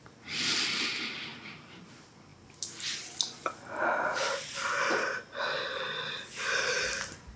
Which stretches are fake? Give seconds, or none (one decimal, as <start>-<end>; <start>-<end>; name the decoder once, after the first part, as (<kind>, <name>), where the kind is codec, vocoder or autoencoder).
none